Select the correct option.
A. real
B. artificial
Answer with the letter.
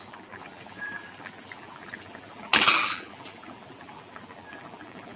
B